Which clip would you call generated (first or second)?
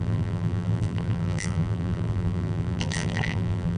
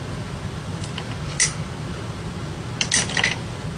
first